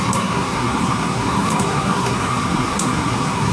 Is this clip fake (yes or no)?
yes